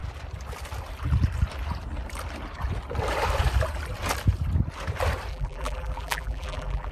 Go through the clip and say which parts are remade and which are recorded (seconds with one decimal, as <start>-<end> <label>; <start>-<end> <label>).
0.0-5.3 recorded; 5.3-6.9 remade